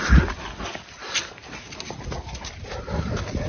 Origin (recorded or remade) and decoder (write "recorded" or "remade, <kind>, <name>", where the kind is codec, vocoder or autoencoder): recorded